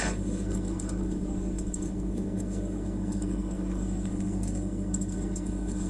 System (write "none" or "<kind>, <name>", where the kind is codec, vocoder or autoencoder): codec, SNAC